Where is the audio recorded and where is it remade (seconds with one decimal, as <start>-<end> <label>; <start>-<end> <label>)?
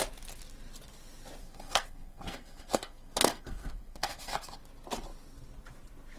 0.0-1.4 recorded; 1.4-4.6 remade; 4.6-6.2 recorded